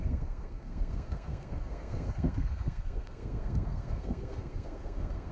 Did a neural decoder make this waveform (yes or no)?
yes